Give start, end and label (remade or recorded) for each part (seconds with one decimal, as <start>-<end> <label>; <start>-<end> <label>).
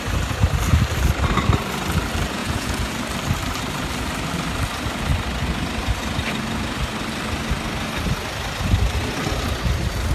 0.0-2.4 recorded; 2.4-2.9 remade; 2.9-10.1 recorded